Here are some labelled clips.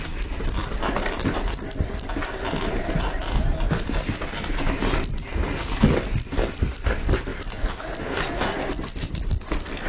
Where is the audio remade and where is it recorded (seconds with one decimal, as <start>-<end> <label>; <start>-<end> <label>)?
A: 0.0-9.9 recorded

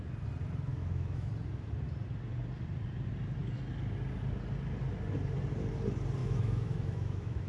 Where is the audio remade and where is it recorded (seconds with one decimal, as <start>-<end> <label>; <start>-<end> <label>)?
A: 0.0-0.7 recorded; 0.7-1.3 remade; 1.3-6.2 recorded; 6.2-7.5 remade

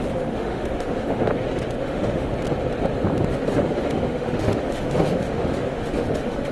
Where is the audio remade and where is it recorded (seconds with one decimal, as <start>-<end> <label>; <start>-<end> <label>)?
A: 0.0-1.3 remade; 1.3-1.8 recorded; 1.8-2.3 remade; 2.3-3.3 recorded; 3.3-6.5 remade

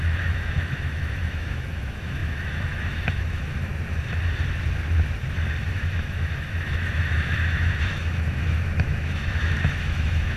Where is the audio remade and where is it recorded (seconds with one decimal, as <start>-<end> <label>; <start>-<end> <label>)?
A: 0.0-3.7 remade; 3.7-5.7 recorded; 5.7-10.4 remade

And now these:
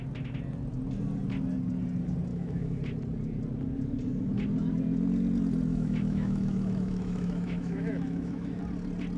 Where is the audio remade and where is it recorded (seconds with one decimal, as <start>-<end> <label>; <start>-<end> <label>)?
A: 0.0-2.3 recorded; 2.3-2.8 remade; 2.8-5.7 recorded; 5.7-8.6 remade; 8.6-9.2 recorded